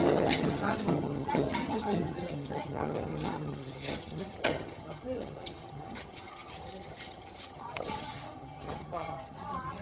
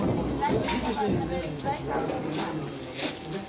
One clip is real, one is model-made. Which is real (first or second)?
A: second